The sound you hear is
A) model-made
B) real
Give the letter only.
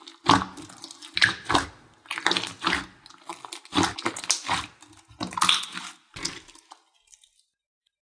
B